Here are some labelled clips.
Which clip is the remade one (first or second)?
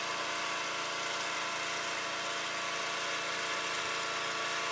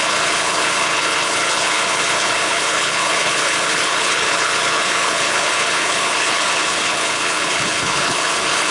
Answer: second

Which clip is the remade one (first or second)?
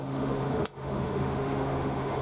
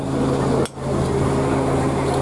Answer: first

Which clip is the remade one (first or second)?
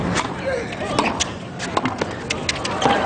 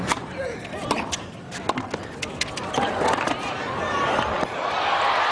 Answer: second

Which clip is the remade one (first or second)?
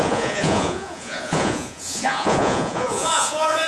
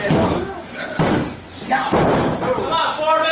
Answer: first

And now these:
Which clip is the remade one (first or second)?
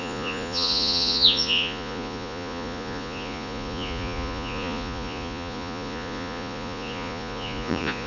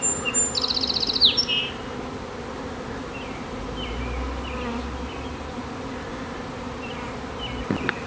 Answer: first